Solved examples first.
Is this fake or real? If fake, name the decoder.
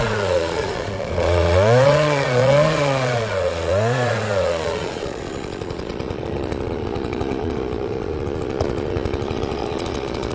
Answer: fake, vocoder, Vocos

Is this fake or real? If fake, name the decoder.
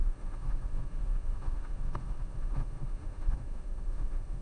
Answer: fake, autoencoder, DAC-VAE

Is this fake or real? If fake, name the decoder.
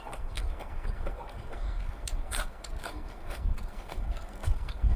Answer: fake, codec, SNAC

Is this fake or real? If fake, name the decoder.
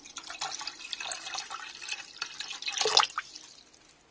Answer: real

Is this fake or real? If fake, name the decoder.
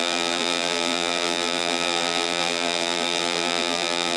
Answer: fake, vocoder, BigVGAN v2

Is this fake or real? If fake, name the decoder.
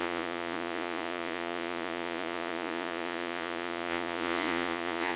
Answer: fake, vocoder, Vocos